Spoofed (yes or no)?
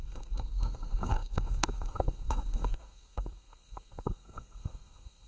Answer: yes